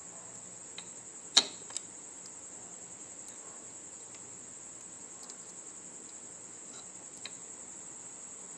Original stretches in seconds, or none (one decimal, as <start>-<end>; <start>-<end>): 0.0-8.6